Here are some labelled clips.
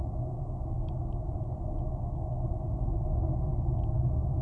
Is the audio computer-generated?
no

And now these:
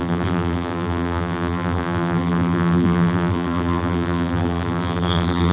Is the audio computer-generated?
yes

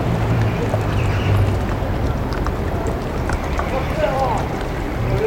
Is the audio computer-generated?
yes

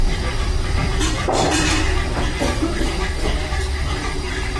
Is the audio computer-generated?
yes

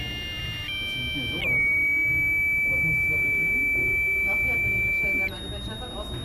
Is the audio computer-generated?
no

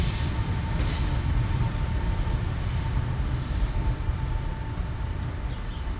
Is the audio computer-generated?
no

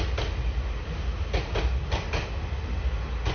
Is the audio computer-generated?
no